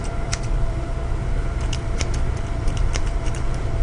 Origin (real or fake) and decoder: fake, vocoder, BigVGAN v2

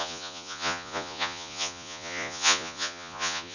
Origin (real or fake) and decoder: fake, vocoder, Vocos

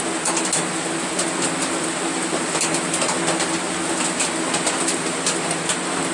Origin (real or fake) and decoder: real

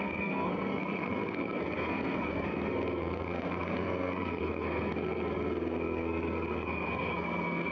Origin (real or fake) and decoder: fake, codec, SNAC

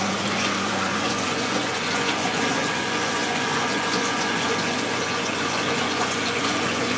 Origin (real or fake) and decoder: fake, vocoder, Vocos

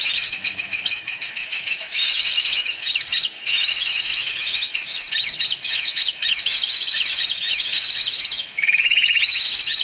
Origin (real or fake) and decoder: fake, autoencoder, DAC-VAE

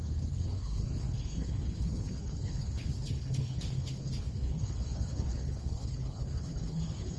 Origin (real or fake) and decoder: fake, codec, HILCodec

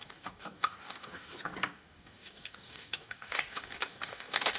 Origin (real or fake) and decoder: fake, codec, DAC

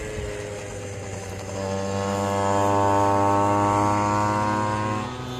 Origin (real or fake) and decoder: real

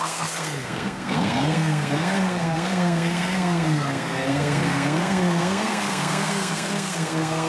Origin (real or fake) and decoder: fake, codec, SNAC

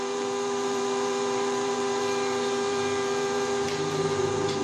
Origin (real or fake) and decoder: fake, vocoder, BigVGAN v2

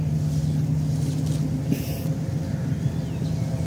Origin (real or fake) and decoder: real